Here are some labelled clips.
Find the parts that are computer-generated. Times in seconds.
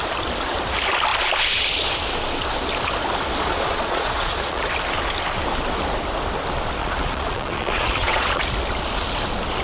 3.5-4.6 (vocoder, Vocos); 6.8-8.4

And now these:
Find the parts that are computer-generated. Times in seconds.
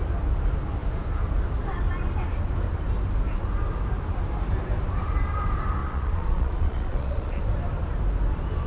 5.8-7.4 (vocoder, Vocos)